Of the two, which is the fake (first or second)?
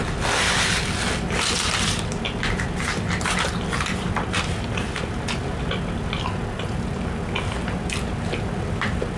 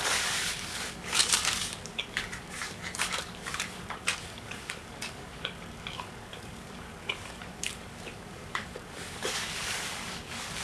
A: second